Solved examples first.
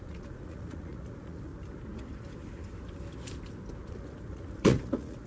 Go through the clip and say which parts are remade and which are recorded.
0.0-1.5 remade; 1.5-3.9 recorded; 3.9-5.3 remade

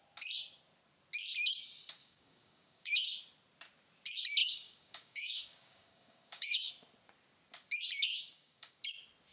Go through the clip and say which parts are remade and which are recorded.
0.0-2.0 recorded; 2.0-2.9 remade; 2.9-4.4 recorded; 4.4-6.7 remade; 6.7-8.1 recorded; 8.1-8.8 remade; 8.8-9.3 recorded

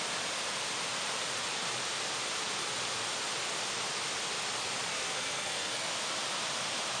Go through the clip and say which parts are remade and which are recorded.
0.0-4.9 recorded; 4.9-5.9 remade; 5.9-7.0 recorded

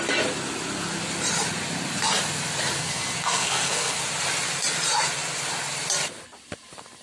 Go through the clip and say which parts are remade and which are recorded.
0.0-2.8 recorded; 2.8-4.0 remade; 4.0-7.0 recorded

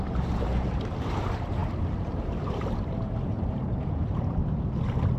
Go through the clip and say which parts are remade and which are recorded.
0.0-1.6 remade; 1.6-2.1 recorded; 2.1-4.4 remade; 4.4-5.2 recorded

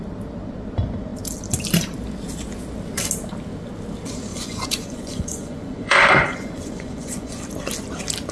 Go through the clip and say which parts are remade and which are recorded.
0.0-4.3 recorded; 4.3-7.4 remade; 7.4-8.3 recorded